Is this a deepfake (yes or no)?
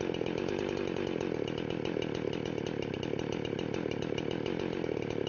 no